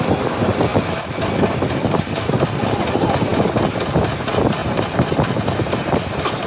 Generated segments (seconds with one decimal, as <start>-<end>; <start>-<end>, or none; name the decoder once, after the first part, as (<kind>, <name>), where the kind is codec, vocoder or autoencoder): 0.7-2.9 (vocoder, BigVGAN v2); 4.6-5.1